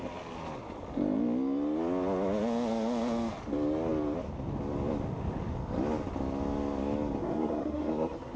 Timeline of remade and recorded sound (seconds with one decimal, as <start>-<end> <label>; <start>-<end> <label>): 0.0-7.2 recorded; 7.2-8.4 remade